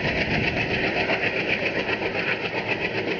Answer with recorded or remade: recorded